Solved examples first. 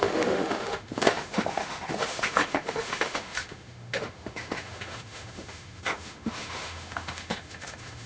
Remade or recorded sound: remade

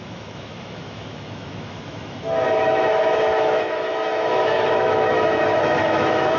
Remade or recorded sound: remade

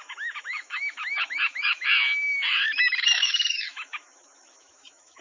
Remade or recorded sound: remade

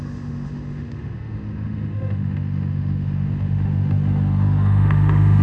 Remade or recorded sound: remade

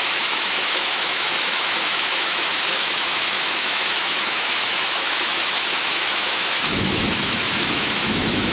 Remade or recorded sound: remade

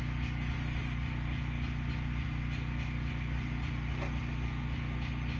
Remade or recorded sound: recorded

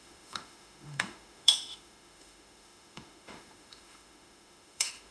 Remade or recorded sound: remade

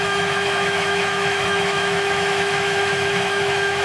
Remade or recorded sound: remade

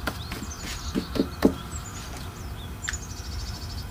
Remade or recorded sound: recorded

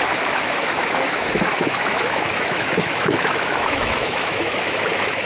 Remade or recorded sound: remade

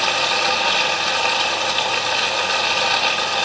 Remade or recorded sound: recorded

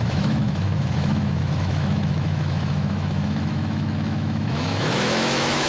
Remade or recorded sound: remade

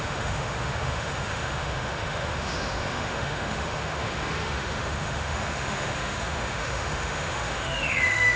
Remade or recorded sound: remade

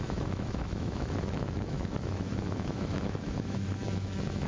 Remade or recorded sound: remade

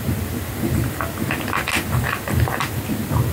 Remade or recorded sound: recorded